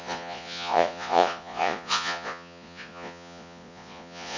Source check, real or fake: fake